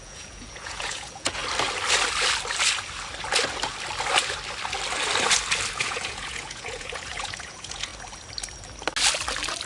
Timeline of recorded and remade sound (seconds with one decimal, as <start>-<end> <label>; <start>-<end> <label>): 0.0-1.4 remade; 1.4-5.7 recorded; 5.7-7.9 remade; 7.9-9.7 recorded